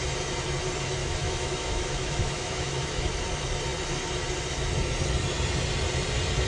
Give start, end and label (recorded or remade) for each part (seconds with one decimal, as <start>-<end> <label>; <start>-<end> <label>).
0.0-1.0 recorded; 1.0-3.1 remade; 3.1-6.5 recorded